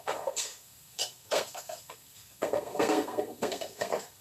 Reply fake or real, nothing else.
fake